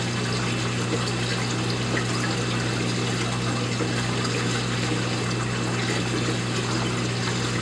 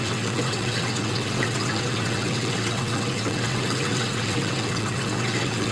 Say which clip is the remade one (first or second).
second